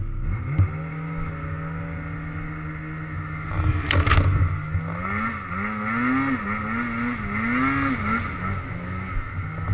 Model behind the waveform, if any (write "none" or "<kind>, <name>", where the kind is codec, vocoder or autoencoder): none